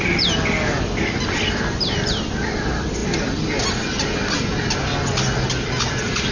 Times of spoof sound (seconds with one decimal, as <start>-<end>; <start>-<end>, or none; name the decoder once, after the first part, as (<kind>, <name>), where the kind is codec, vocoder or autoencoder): none